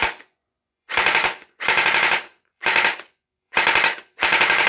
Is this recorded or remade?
remade